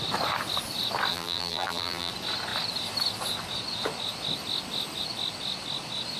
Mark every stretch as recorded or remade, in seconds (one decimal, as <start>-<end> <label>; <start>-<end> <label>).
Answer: 0.0-1.1 recorded; 1.1-2.1 remade; 2.1-6.2 recorded